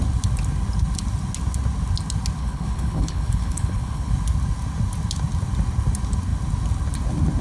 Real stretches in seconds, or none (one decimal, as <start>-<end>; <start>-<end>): 0.0-2.4; 4.1-7.4